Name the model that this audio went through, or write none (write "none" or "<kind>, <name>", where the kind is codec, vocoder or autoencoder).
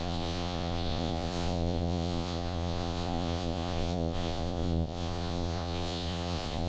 vocoder, Vocos